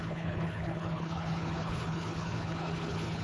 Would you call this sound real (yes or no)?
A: no